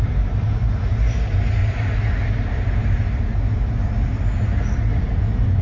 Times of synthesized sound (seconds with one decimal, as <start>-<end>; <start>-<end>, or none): none